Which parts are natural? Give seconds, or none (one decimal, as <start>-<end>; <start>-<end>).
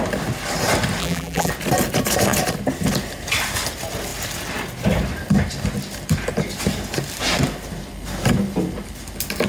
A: 0.0-1.0; 1.5-9.5